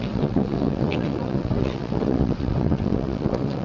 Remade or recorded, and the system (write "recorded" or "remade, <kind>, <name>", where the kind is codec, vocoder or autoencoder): remade, vocoder, WaveNeXt